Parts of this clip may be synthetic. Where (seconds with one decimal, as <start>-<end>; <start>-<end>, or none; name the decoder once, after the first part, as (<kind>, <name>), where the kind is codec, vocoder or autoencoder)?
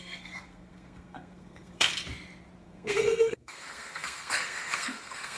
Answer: 0.0-1.9 (codec, SNAC); 2.6-5.4